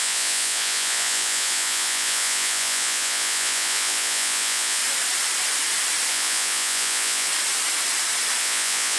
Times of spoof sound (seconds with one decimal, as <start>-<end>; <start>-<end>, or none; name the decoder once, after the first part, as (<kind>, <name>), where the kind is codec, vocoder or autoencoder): 0.0-4.8 (vocoder, Vocos); 6.1-7.3; 8.4-9.0